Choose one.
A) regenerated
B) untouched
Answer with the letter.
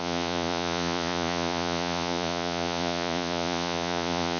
A